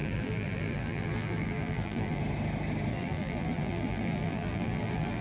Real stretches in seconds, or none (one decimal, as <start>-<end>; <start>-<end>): 2.2-2.9